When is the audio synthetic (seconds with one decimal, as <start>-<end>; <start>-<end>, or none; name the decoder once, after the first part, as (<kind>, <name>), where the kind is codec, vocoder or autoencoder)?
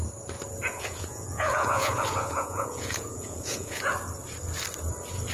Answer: 0.7-3.9 (vocoder, Vocos)